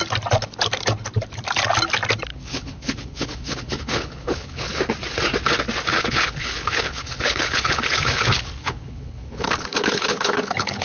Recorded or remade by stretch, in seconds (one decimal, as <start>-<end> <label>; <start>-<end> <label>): 0.0-2.3 recorded; 2.3-4.8 remade; 4.8-5.9 recorded; 5.9-10.8 remade